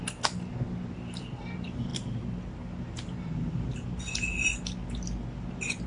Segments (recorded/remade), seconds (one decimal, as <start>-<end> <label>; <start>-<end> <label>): 0.0-5.9 recorded